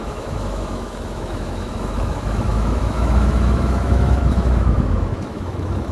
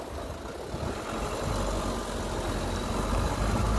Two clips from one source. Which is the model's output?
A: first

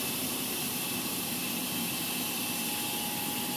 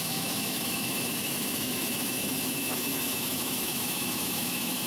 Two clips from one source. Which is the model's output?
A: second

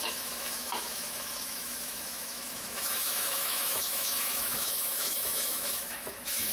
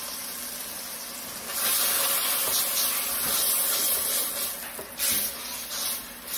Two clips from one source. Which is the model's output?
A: first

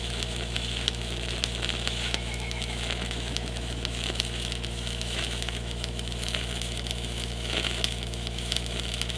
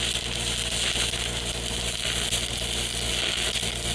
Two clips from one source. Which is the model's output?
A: first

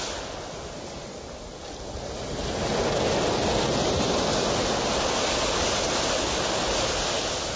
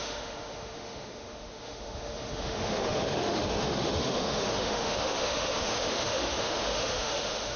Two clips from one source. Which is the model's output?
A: second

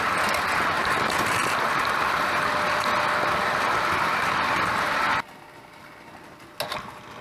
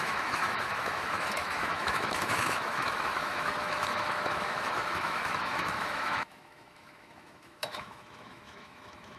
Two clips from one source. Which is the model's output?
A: second